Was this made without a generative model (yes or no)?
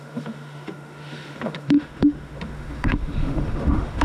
no